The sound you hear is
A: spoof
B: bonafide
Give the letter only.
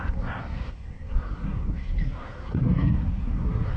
A